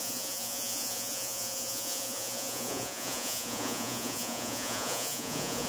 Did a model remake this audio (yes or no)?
yes